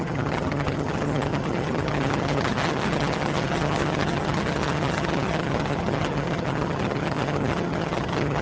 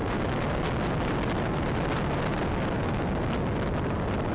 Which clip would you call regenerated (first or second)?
first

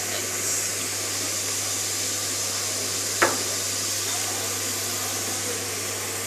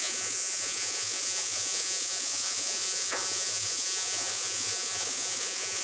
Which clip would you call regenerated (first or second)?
second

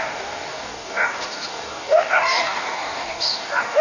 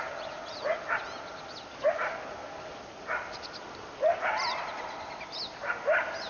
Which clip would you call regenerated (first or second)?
first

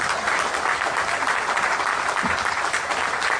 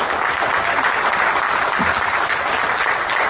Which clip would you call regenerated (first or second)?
first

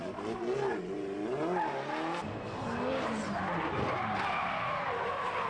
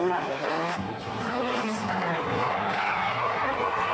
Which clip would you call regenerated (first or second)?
second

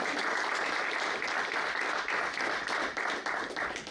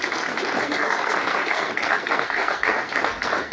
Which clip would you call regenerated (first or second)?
second